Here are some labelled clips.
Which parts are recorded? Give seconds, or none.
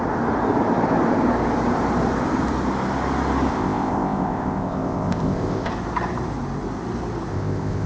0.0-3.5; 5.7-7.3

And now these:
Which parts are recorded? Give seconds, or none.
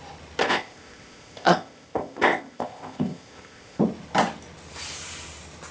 0.0-0.4; 3.8-5.7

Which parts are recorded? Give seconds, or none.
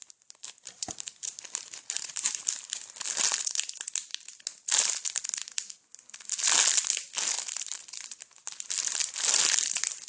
0.0-10.1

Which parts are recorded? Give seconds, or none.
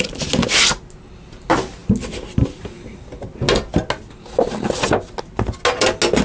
0.0-6.2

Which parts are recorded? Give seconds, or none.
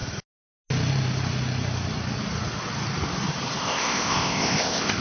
0.0-3.6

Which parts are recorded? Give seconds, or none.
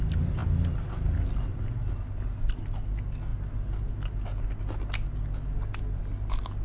0.0-6.6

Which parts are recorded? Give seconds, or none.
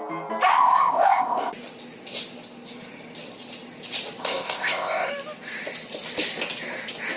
0.0-0.5; 1.5-4.2; 5.1-7.2